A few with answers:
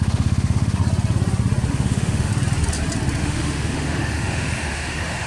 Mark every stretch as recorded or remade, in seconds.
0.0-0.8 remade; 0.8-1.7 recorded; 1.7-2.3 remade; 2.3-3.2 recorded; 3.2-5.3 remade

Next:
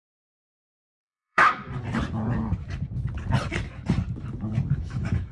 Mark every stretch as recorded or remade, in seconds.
0.0-1.6 remade; 1.6-4.8 recorded; 4.8-5.3 remade

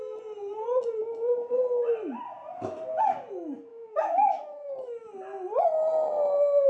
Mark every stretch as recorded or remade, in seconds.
0.0-3.7 recorded; 3.7-4.7 remade; 4.7-6.7 recorded

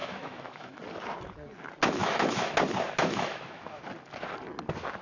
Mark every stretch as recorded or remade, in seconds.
0.0-0.8 remade; 0.8-2.0 recorded; 2.0-2.5 remade; 2.5-3.0 recorded; 3.0-3.8 remade; 3.8-5.0 recorded

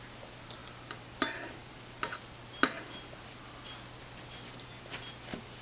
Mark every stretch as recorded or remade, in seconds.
0.0-5.6 recorded

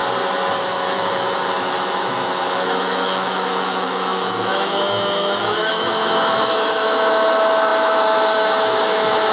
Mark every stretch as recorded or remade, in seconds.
0.0-0.6 recorded; 0.6-9.3 remade

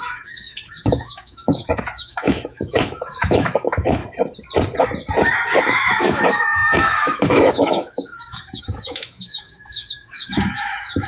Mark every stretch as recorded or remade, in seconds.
0.0-4.0 remade; 4.0-5.6 recorded; 5.6-11.1 remade

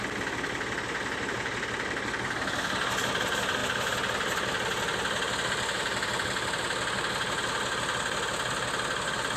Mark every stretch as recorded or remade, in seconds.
0.0-9.4 recorded